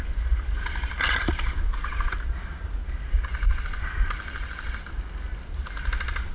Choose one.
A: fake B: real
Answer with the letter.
B